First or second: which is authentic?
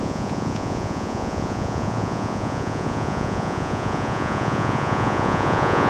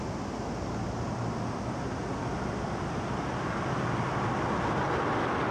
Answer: second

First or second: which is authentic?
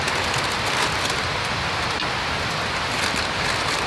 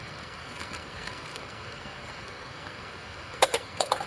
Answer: first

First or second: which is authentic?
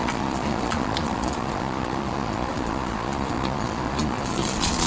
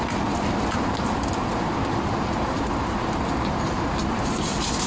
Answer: second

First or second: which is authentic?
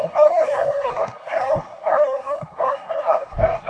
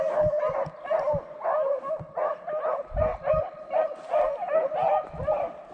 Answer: second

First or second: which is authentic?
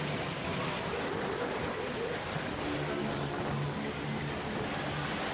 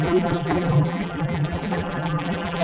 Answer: first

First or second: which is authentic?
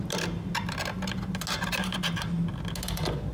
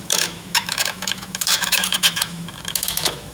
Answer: first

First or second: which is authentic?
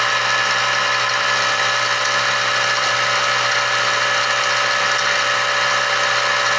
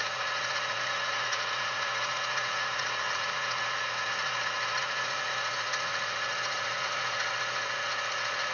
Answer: first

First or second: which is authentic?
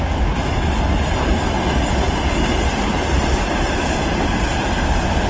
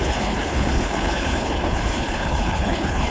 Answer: first